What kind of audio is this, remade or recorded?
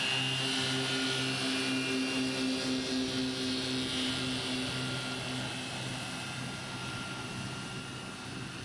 recorded